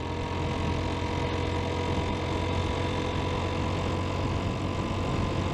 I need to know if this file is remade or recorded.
recorded